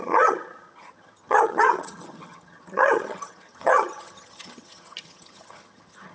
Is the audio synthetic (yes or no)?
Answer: yes